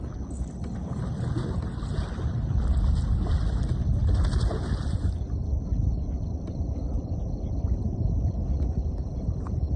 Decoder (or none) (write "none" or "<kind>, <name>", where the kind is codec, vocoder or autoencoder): none